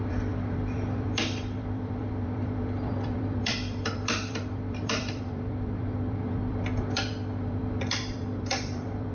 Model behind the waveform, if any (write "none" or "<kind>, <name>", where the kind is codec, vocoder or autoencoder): vocoder, BigVGAN v2